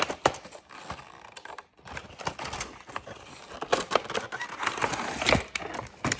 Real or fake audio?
real